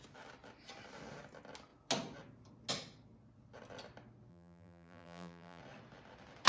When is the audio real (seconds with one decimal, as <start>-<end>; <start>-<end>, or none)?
0.0-4.3; 5.6-6.5